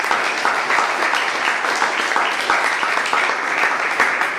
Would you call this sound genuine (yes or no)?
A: yes